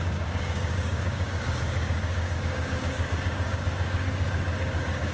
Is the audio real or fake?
fake